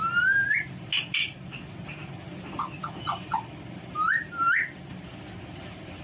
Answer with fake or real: real